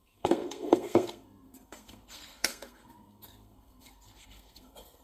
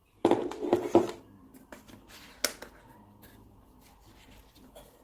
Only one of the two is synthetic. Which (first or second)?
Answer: first